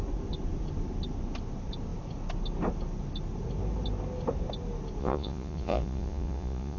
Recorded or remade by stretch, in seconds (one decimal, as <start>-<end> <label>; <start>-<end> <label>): 0.0-5.0 recorded; 5.0-6.8 remade